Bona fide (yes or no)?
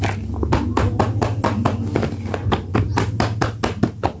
yes